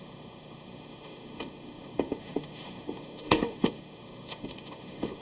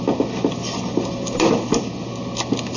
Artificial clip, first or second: first